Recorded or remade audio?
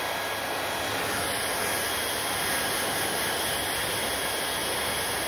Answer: recorded